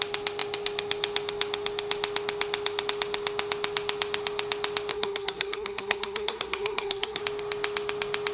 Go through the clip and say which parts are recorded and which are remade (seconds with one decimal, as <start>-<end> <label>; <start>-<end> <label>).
0.0-4.9 recorded; 4.9-7.2 remade; 7.2-8.3 recorded